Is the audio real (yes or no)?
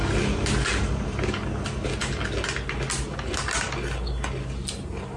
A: yes